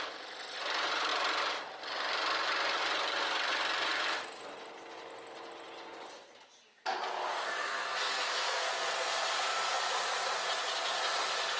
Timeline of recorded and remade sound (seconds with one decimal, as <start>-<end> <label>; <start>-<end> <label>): 0.0-7.3 recorded; 7.3-8.7 remade; 8.7-11.6 recorded